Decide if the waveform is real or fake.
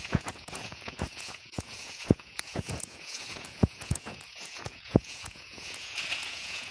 fake